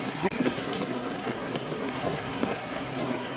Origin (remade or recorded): remade